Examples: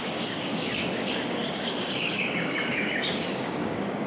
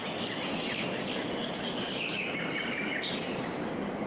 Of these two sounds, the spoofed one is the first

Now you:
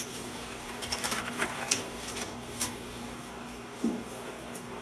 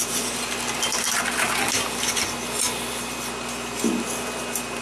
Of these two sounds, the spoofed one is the first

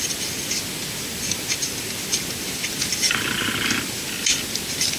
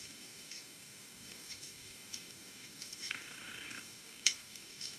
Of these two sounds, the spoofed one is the second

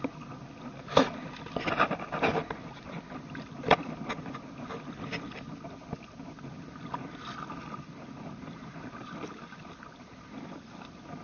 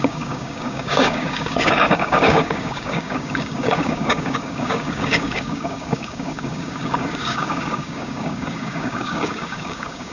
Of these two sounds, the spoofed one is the second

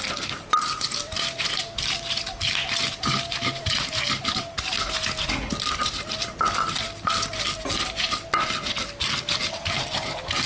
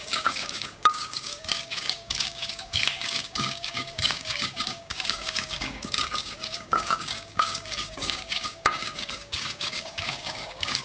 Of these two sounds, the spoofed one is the second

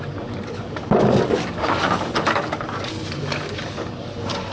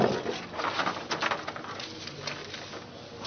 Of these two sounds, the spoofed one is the first